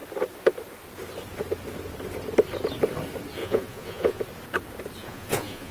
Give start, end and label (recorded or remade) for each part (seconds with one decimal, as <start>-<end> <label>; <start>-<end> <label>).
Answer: 0.0-3.4 recorded; 3.4-4.2 remade; 4.2-5.0 recorded; 5.0-5.7 remade